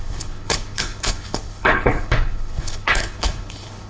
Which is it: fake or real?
fake